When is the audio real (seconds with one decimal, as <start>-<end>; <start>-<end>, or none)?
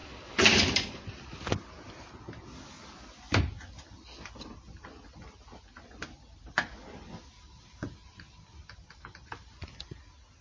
0.0-10.4